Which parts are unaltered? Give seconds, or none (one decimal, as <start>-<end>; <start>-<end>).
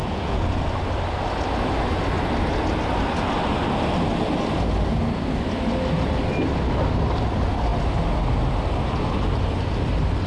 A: 0.6-10.3